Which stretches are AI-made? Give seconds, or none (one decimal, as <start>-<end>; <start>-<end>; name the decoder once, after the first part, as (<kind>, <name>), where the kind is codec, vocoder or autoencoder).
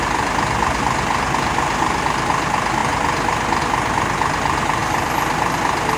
4.8-5.6 (vocoder, BigVGAN v2)